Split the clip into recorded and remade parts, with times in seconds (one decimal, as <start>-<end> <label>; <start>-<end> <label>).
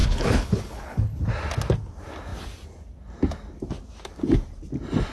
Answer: 0.0-1.3 remade; 1.3-5.1 recorded